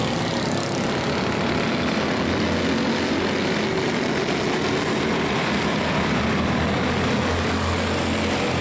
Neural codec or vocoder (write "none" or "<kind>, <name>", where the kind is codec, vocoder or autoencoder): none